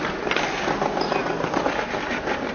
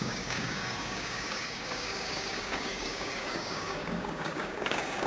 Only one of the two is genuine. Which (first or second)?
first